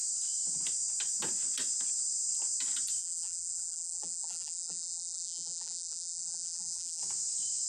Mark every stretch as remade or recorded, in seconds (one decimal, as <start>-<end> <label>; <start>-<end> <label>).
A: 0.0-3.0 recorded; 3.0-7.0 remade; 7.0-7.7 recorded

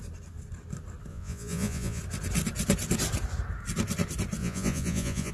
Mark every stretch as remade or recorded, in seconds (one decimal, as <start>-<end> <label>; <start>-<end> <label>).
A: 0.0-1.1 recorded; 1.1-2.0 remade; 2.0-4.4 recorded; 4.4-5.3 remade

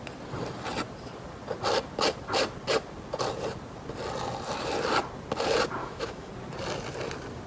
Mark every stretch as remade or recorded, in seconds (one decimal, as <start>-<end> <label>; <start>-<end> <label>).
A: 0.0-5.8 recorded; 5.8-6.3 remade; 6.3-7.5 recorded

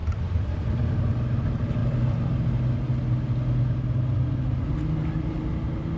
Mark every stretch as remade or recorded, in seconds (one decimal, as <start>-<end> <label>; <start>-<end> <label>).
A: 0.0-1.1 remade; 1.1-6.0 recorded

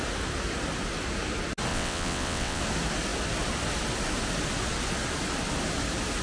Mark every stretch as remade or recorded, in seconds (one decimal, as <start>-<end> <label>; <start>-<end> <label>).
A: 0.0-1.7 recorded; 1.7-2.6 remade; 2.6-6.2 recorded

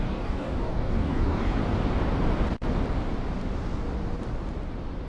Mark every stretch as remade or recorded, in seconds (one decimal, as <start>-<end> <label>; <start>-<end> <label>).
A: 0.0-1.6 remade; 1.6-5.1 recorded

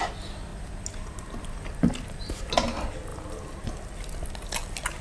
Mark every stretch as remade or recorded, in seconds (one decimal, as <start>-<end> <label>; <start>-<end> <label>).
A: 0.0-5.0 recorded

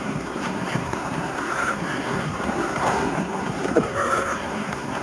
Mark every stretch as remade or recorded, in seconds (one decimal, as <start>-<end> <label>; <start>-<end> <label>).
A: 0.0-5.0 remade